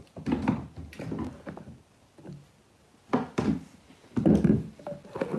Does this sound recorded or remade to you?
recorded